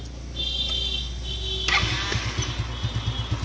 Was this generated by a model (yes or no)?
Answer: no